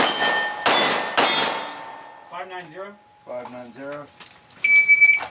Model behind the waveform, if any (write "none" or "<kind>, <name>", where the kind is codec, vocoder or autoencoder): none